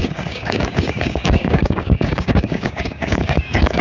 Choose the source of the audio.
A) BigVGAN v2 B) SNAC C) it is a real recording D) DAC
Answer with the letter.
D